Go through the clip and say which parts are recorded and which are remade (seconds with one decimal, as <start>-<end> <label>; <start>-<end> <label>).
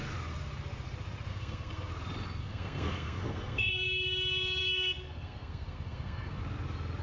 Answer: 0.0-1.3 recorded; 1.3-1.9 remade; 1.9-2.4 recorded; 2.4-3.7 remade; 3.7-4.6 recorded; 4.6-6.4 remade; 6.4-7.0 recorded